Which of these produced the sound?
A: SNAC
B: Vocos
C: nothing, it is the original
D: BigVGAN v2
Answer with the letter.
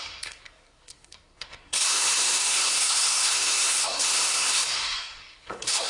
A